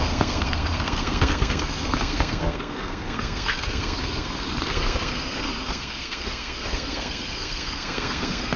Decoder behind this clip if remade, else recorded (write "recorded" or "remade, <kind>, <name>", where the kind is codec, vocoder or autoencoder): remade, codec, SNAC